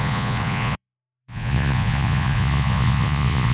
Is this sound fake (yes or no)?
yes